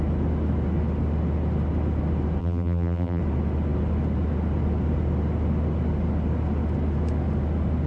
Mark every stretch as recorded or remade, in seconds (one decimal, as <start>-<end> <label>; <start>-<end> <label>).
0.0-2.4 recorded; 2.4-3.2 remade; 3.2-7.9 recorded